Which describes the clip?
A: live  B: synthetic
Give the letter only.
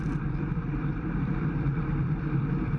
B